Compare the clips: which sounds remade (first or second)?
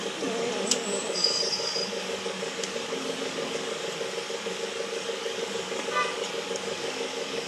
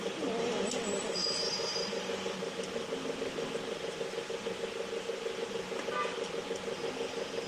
first